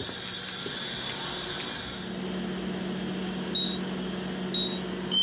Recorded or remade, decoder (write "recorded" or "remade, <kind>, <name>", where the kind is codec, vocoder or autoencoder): recorded